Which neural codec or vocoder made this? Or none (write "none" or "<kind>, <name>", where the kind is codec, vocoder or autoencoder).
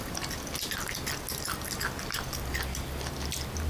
none